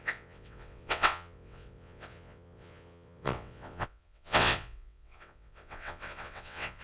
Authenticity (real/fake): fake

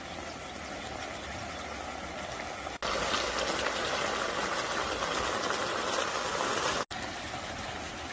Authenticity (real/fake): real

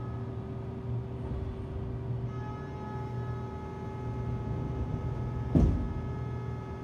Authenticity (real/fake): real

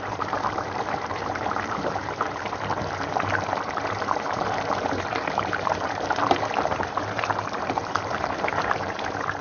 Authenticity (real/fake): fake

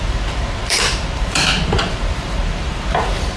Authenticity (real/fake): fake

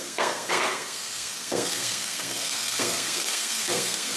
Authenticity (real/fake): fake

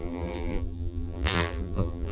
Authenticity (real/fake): fake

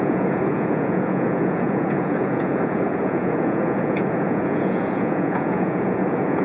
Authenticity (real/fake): fake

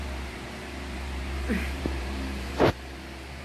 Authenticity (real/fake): fake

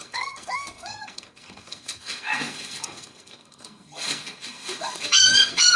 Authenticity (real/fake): fake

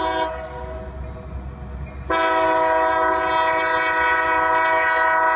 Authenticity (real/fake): real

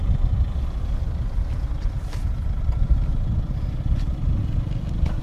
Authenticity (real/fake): real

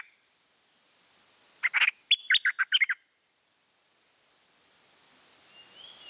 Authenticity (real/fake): real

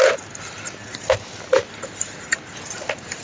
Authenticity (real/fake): real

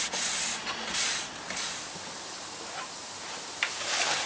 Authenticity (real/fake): real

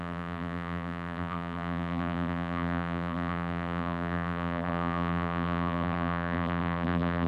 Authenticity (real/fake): fake